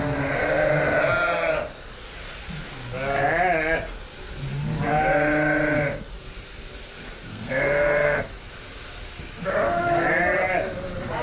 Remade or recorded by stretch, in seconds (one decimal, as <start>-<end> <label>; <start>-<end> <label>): 0.0-7.3 recorded; 7.3-8.2 remade; 8.2-11.2 recorded